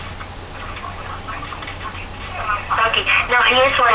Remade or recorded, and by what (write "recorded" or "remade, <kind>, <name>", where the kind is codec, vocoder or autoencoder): recorded